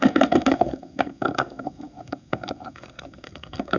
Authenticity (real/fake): fake